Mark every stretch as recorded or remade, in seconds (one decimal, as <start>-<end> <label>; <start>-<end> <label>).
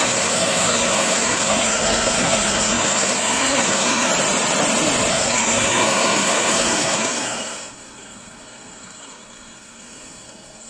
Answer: 0.0-4.1 remade; 4.1-5.1 recorded; 5.1-10.7 remade